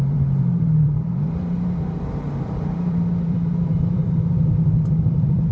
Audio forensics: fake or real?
fake